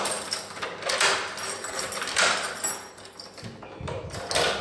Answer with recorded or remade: recorded